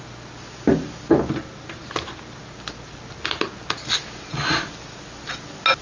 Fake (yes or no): no